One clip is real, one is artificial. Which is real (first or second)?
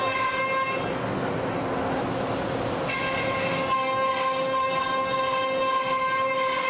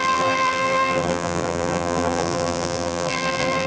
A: first